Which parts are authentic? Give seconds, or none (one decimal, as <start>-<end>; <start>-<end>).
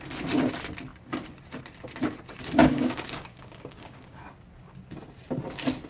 0.0-2.6; 4.2-5.9